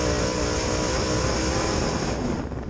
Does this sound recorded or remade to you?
recorded